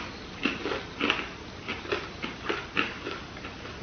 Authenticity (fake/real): real